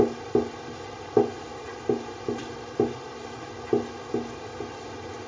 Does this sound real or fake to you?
real